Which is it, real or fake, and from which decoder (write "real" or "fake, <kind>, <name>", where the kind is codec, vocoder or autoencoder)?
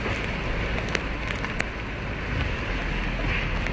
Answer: real